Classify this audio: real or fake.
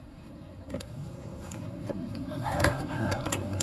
fake